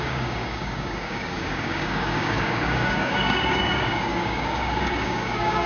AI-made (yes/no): yes